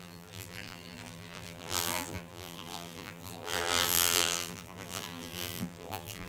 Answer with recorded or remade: remade